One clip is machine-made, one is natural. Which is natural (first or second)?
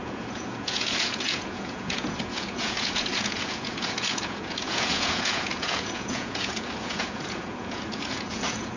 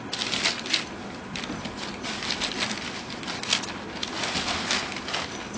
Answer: second